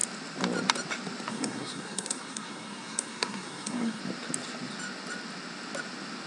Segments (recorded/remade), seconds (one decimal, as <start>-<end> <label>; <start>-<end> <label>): 0.0-1.3 recorded; 1.3-4.0 remade; 4.0-6.3 recorded